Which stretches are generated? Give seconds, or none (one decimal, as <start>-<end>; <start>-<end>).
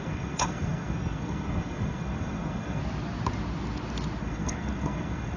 0.0-2.8; 4.2-5.4